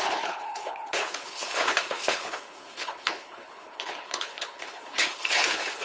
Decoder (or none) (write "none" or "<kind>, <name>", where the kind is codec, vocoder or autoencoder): codec, HILCodec